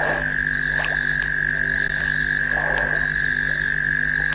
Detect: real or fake real